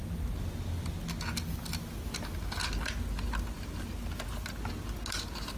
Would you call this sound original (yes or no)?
yes